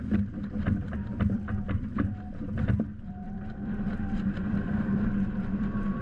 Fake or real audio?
fake